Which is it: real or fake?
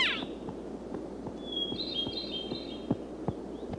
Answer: real